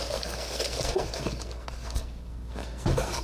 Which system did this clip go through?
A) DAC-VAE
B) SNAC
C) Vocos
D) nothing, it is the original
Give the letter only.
B